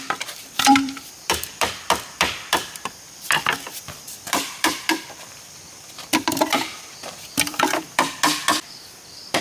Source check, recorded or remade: remade